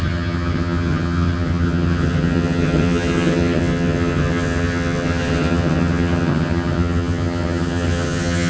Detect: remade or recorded remade